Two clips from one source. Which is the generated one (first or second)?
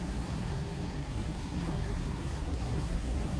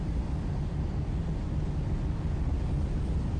first